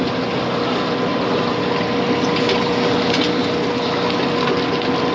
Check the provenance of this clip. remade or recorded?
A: recorded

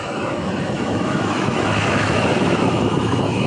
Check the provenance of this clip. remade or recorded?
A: remade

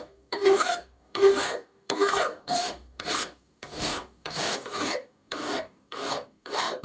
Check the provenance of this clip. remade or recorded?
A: remade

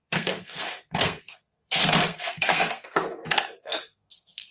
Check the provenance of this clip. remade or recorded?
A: remade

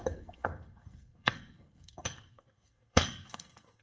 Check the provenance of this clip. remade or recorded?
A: remade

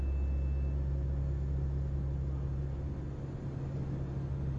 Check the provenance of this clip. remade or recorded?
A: recorded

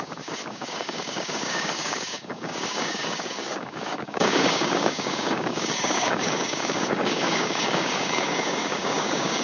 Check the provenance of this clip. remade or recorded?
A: remade